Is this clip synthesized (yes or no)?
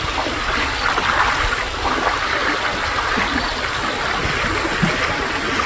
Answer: no